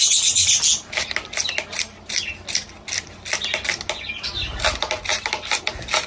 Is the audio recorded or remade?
recorded